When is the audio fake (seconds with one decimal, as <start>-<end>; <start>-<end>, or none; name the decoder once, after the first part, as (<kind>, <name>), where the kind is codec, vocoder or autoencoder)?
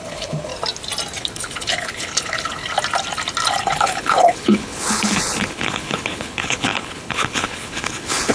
0.0-0.5 (codec, HILCodec); 1.2-2.6; 3.6-8.3